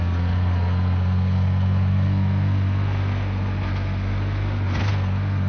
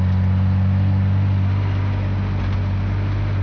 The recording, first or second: second